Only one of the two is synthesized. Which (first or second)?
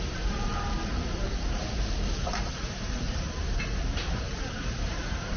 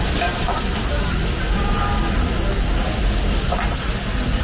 first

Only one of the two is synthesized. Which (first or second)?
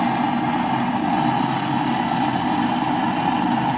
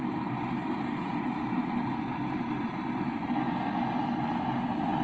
second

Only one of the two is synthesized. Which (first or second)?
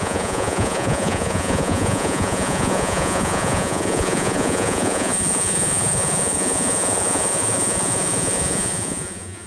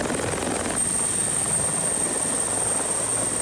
first